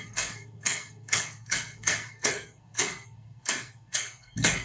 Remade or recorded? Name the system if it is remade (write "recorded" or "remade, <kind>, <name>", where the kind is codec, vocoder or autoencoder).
remade, codec, SNAC